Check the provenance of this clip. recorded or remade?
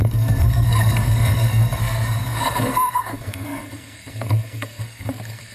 remade